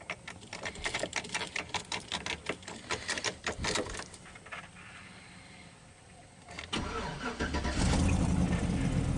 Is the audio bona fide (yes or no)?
no